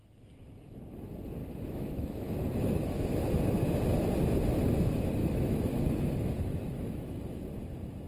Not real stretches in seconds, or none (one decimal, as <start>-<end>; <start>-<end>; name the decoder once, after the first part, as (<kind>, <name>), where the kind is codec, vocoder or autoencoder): 1.4-3.3 (autoencoder, DAC-VAE); 5.2-7.2